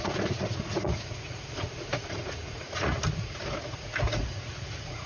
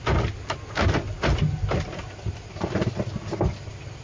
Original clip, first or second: second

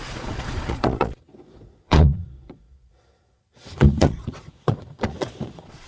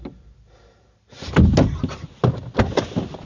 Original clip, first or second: second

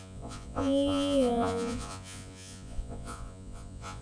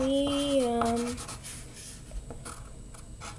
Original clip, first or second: second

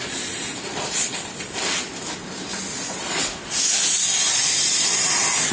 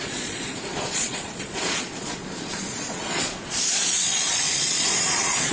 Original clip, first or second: first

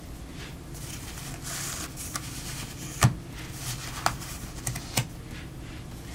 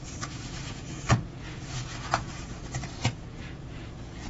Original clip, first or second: first